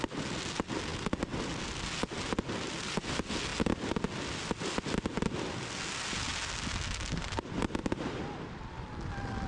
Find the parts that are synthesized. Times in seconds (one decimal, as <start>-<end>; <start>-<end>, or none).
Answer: none